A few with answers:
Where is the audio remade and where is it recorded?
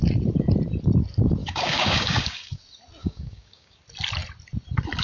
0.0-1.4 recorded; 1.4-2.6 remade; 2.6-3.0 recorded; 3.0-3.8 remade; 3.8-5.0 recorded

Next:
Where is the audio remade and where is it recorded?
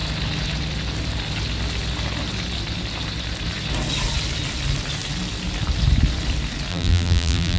0.0-6.7 recorded; 6.7-7.6 remade